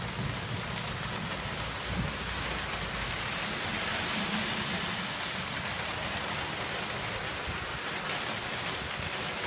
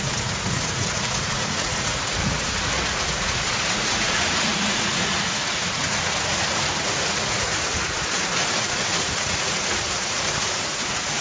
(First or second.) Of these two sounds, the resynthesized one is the second